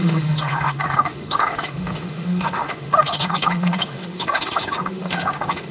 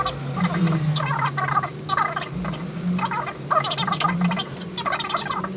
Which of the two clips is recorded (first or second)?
second